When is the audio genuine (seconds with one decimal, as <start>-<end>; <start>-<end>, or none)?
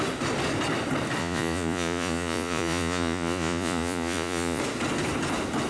0.0-1.2; 4.6-5.7